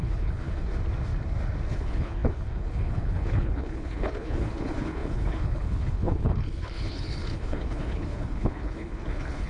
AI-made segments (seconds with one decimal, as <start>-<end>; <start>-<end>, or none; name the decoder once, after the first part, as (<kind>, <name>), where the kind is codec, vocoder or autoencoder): 0.0-0.7 (codec, HILCodec); 1.7-9.5